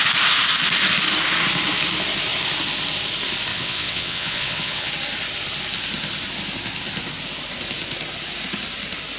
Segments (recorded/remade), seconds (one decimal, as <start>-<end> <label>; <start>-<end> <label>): 0.0-3.5 recorded; 3.5-4.9 remade; 4.9-9.2 recorded